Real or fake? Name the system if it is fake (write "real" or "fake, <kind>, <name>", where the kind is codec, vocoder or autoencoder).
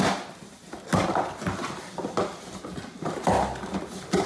real